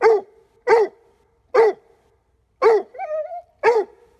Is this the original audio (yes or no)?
yes